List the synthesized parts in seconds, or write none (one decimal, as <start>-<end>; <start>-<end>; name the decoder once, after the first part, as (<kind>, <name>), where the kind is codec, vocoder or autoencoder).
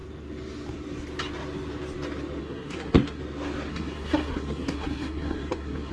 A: 2.4-3.2 (codec, SNAC); 3.7-5.9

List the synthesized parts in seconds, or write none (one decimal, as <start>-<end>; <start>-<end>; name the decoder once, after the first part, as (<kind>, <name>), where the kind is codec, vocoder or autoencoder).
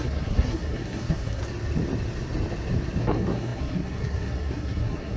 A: 0.0-1.4 (codec, SNAC); 3.0-5.2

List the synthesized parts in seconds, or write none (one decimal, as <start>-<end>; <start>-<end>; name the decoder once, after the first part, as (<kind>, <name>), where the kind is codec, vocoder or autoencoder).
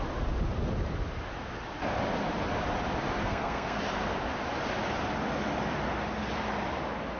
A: 3.2-3.8 (codec, SNAC)